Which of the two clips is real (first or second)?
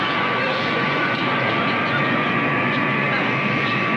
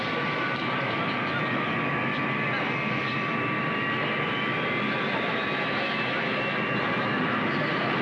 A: second